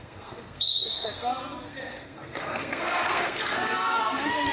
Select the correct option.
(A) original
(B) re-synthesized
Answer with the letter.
B